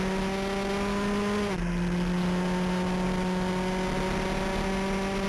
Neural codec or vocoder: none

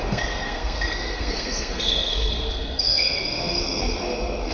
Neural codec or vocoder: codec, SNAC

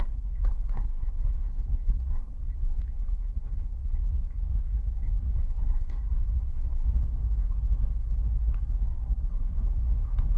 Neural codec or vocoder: codec, SNAC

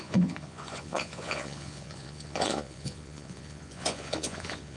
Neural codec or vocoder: vocoder, Vocos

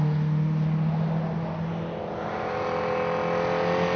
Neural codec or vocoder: none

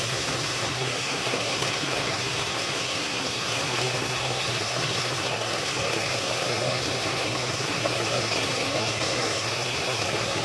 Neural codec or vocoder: codec, SNAC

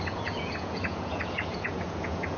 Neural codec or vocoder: vocoder, Vocos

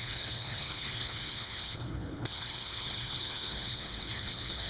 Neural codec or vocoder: codec, HILCodec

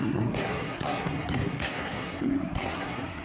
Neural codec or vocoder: codec, SNAC